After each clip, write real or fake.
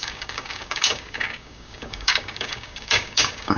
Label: fake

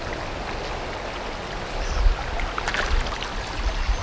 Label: real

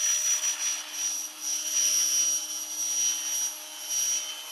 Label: real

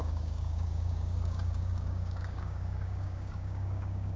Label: fake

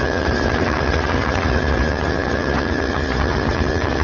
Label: fake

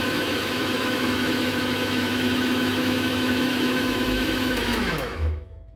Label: fake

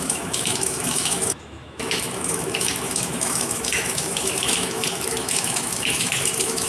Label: fake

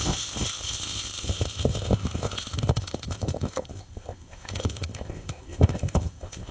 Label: fake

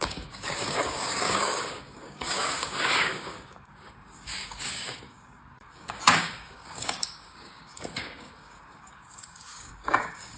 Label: fake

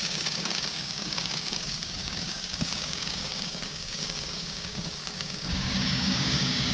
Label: fake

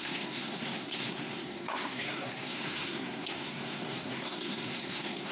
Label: fake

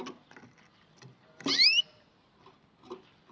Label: real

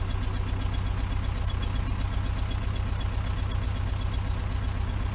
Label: real